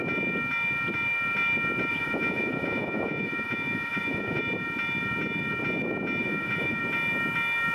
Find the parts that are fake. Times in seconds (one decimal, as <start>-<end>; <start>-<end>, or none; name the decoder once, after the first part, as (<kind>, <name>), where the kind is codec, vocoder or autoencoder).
1.9-4.4 (vocoder, Vocos); 6.2-6.8